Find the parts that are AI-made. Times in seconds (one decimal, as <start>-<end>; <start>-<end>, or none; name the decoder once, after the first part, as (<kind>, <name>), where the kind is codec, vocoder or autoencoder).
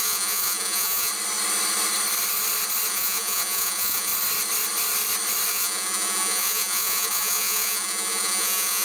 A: 0.0-1.1 (vocoder, Vocos); 2.9-4.1; 5.5-8.8